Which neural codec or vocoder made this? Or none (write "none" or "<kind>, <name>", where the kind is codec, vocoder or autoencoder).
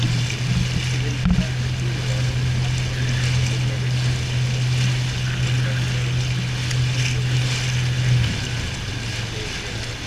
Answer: none